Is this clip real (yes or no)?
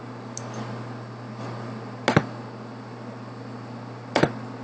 yes